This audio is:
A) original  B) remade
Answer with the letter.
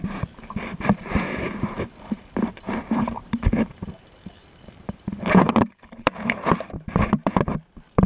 B